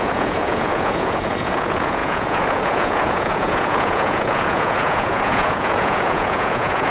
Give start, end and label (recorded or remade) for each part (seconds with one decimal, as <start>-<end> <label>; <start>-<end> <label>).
0.0-6.9 remade